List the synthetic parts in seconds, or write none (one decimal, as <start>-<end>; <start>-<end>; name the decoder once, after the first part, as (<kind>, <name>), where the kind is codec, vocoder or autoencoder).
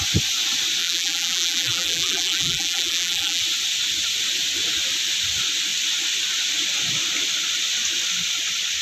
0.8-3.4 (vocoder, BigVGAN v2)